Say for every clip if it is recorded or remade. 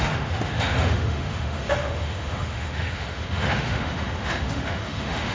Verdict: remade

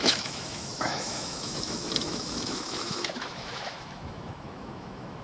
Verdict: remade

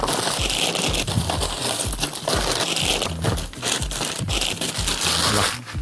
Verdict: recorded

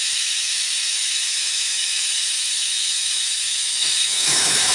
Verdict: remade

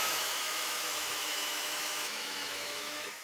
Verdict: remade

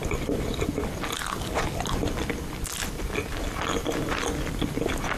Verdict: recorded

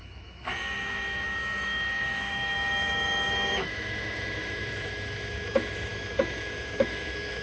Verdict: remade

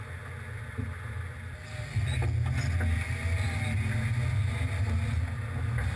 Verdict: recorded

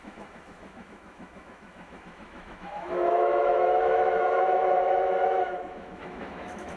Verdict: remade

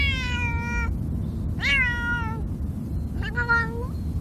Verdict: recorded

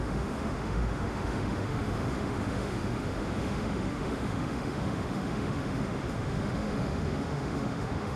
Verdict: remade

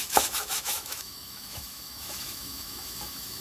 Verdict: remade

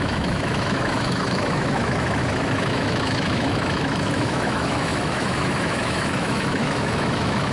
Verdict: remade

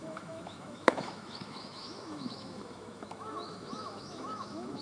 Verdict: remade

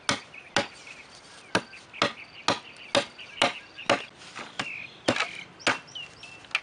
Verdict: recorded